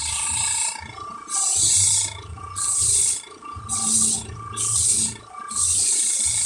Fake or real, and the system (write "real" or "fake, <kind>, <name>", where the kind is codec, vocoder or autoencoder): real